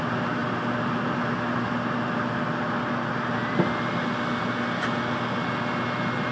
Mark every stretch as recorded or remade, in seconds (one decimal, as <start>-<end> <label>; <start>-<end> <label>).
0.0-6.3 recorded